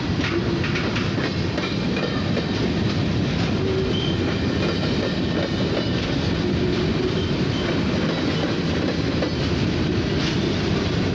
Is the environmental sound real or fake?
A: real